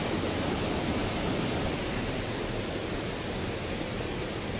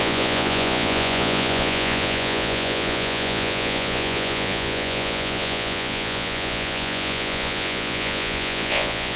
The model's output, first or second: second